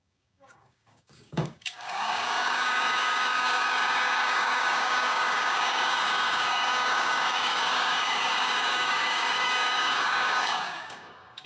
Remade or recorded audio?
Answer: remade